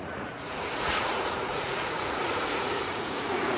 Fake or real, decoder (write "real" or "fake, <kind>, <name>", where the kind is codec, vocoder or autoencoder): fake, vocoder, Vocos